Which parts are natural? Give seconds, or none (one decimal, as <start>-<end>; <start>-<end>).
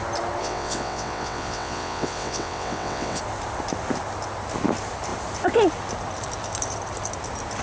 0.0-0.4; 3.2-7.6